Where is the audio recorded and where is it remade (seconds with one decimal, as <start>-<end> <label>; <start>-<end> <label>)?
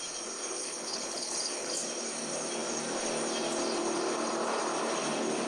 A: 0.0-0.6 recorded; 0.6-1.7 remade; 1.7-5.5 recorded